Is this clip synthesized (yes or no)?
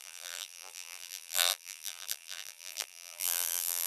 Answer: yes